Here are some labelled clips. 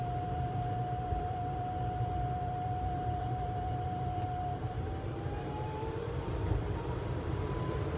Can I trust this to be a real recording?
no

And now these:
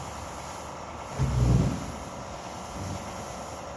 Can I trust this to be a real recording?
yes